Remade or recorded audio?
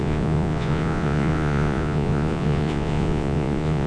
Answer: remade